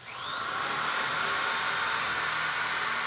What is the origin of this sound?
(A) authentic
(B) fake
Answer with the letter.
A